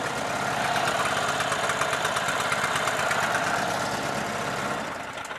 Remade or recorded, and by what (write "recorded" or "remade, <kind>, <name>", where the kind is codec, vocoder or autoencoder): recorded